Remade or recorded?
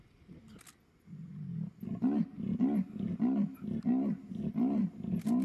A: recorded